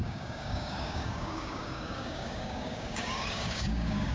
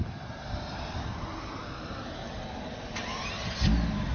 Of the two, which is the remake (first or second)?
first